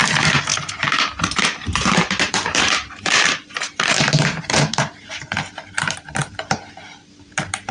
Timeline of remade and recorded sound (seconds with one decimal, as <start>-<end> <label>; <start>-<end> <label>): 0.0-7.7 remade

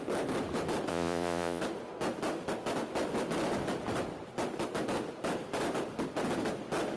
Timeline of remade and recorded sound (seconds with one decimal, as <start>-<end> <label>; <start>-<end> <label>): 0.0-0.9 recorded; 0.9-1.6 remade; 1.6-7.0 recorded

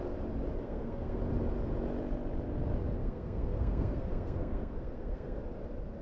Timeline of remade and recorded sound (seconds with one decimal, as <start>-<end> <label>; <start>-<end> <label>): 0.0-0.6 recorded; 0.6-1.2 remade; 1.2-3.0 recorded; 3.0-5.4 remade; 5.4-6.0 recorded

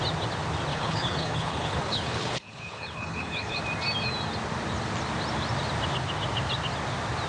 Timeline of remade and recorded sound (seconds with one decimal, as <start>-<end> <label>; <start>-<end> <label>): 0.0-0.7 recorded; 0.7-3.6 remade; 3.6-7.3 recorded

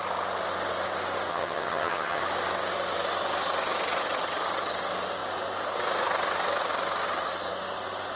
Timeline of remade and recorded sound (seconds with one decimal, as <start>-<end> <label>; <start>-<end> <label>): 0.0-1.3 recorded; 1.3-2.2 remade; 2.2-8.2 recorded